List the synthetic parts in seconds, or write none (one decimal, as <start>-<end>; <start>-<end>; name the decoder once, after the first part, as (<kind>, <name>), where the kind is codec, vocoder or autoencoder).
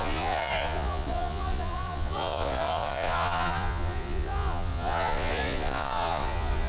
0.0-6.7 (vocoder, Vocos)